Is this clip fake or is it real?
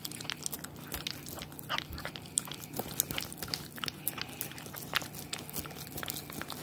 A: real